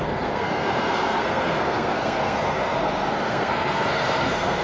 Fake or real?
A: fake